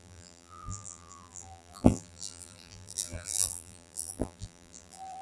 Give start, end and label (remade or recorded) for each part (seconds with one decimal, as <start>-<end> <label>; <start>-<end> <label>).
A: 0.0-5.2 remade